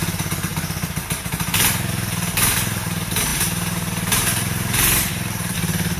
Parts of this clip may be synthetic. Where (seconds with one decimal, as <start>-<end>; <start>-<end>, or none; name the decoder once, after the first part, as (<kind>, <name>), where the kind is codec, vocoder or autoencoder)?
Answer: 0.0-6.0 (vocoder, BigVGAN v2)